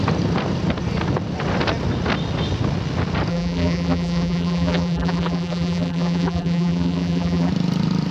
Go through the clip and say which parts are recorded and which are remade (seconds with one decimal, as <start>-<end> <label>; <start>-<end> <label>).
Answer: 0.0-3.3 recorded; 3.3-7.5 remade; 7.5-8.1 recorded

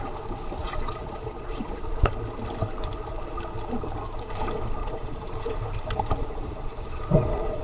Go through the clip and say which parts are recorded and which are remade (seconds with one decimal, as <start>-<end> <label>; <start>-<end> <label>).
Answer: 0.0-0.6 recorded; 0.6-2.2 remade; 2.2-4.8 recorded; 4.8-5.4 remade; 5.4-6.2 recorded; 6.2-7.6 remade

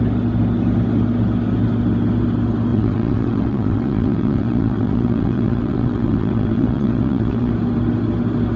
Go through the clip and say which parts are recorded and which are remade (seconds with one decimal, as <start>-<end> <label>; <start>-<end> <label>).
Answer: 0.0-2.7 recorded; 2.7-7.5 remade; 7.5-8.6 recorded

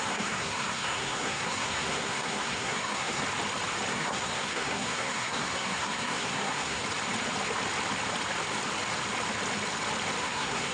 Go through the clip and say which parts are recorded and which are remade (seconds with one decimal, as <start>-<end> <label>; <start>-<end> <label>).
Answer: 0.0-3.2 remade; 3.2-3.9 recorded; 3.9-6.8 remade; 6.8-10.2 recorded; 10.2-10.7 remade

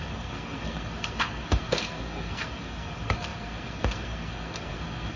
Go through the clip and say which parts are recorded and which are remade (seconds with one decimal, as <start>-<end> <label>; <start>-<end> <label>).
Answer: 0.0-5.2 remade

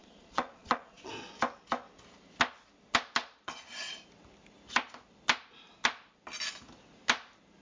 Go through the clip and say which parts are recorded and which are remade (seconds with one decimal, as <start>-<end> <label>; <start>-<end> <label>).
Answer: 0.0-1.1 remade; 1.1-3.2 recorded; 3.2-3.9 remade; 3.9-7.6 recorded

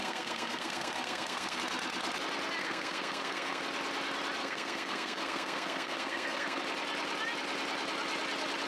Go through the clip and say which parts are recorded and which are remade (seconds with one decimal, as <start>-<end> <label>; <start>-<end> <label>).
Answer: 0.0-1.6 remade; 1.6-2.6 recorded; 2.6-3.6 remade; 3.6-4.4 recorded; 4.4-6.6 remade; 6.6-8.7 recorded

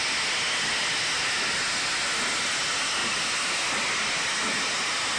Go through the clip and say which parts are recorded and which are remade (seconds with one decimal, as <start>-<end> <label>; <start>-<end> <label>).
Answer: 0.0-5.2 recorded